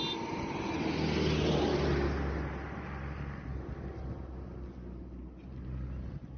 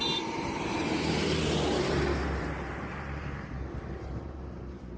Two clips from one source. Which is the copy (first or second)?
second